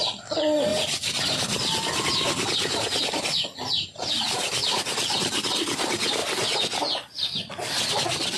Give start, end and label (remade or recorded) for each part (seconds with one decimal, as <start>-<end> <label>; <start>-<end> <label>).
0.0-8.4 recorded